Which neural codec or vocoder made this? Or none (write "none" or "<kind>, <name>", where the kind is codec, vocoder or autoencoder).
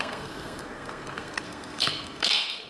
codec, SNAC